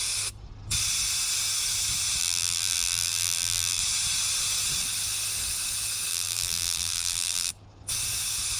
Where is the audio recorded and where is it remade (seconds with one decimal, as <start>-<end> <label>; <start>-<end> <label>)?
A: 0.0-2.2 recorded; 2.2-3.8 remade; 3.8-6.1 recorded; 6.1-7.5 remade; 7.5-8.6 recorded